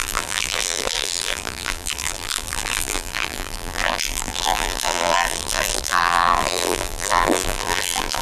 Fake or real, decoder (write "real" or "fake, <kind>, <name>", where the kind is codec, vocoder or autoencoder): fake, vocoder, BigVGAN v2